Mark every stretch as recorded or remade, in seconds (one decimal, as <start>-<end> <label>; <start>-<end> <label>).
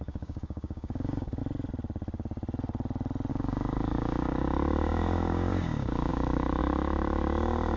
0.0-1.4 remade; 1.4-3.3 recorded; 3.3-7.8 remade